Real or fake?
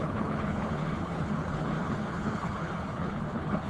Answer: fake